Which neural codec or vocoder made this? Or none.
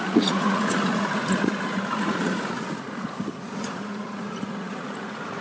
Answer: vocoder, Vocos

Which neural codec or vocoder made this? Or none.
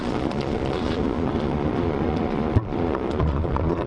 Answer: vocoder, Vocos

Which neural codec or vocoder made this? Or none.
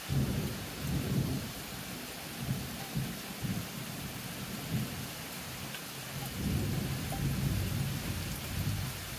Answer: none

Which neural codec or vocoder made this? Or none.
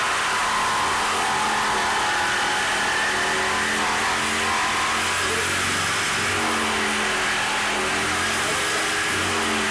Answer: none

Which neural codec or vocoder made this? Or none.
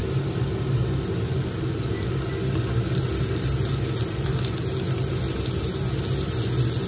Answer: none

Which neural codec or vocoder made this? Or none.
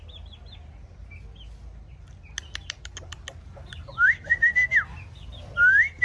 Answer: none